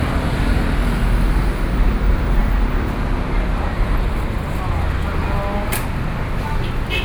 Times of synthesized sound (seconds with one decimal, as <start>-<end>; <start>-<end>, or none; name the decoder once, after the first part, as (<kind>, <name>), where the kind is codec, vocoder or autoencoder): none